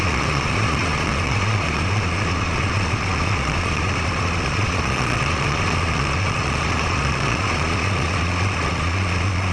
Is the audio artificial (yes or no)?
yes